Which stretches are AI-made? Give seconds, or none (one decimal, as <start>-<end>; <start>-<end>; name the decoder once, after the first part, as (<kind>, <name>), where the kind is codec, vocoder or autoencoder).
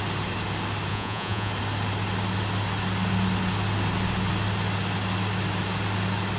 0.9-1.5 (vocoder, Vocos)